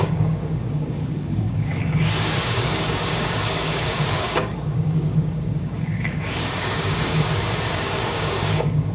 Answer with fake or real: fake